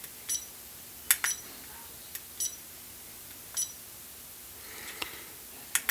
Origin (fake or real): real